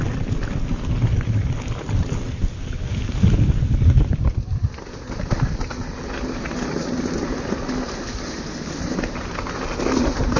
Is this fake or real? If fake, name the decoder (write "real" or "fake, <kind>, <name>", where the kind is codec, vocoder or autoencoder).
real